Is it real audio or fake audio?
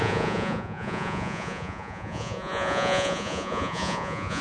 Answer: fake